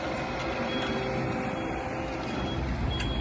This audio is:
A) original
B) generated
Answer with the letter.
A